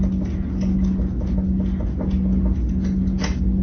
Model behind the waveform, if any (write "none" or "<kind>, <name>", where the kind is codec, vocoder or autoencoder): none